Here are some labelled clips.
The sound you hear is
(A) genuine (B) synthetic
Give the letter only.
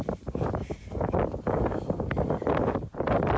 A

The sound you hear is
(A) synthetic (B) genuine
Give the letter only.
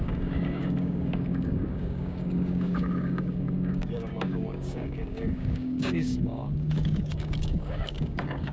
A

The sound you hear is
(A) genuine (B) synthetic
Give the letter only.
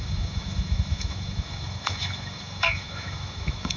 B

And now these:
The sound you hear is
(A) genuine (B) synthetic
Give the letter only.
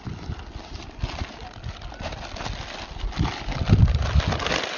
A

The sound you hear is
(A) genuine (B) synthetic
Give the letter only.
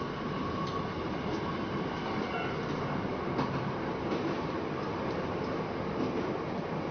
B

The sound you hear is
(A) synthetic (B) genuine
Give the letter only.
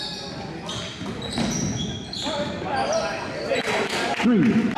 B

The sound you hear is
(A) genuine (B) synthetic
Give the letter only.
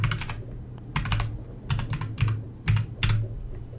A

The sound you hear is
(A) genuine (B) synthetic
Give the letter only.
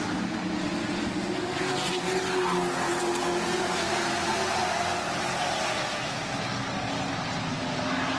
A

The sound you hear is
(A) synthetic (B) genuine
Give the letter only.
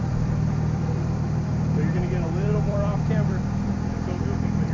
A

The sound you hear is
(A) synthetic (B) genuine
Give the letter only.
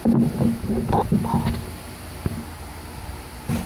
B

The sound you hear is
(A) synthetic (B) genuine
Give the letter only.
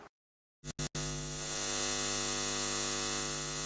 B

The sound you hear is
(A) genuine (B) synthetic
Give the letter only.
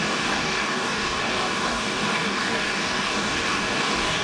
B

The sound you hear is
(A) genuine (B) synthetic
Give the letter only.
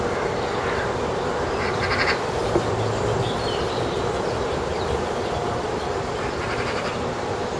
B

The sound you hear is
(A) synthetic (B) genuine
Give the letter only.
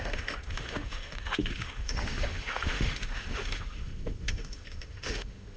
A